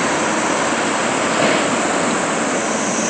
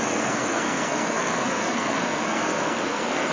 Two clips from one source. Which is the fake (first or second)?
second